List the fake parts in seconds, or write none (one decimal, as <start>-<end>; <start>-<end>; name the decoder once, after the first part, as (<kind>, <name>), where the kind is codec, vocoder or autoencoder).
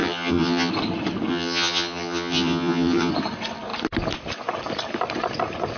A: 0.0-0.7 (vocoder, HiFi-GAN); 1.3-3.1